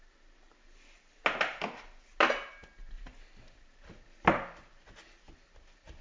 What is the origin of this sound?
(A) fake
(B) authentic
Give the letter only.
B